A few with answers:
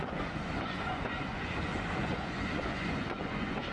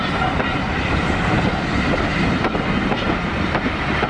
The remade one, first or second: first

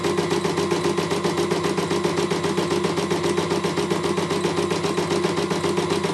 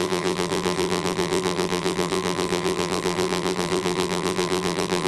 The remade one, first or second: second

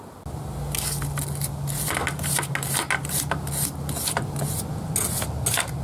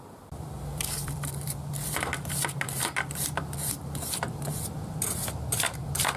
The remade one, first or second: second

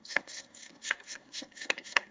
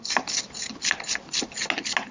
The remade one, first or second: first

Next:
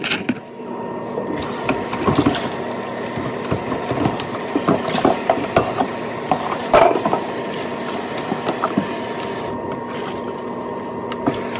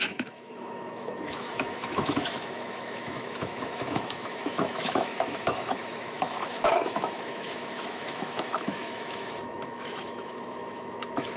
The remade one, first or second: second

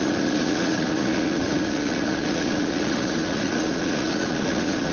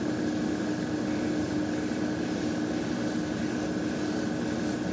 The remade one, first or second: first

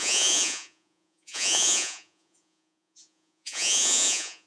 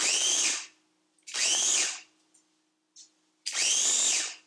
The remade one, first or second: first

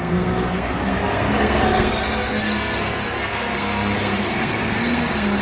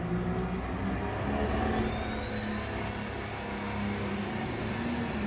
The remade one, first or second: first